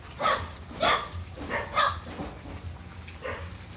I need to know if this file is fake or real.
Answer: real